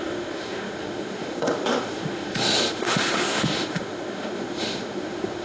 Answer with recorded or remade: remade